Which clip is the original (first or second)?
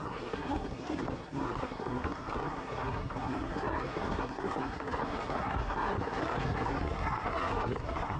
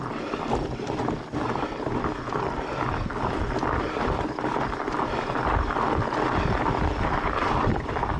second